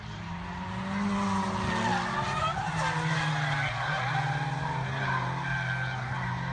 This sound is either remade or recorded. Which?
recorded